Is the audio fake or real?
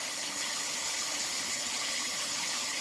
fake